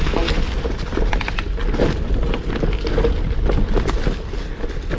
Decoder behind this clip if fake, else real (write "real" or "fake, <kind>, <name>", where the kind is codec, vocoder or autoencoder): real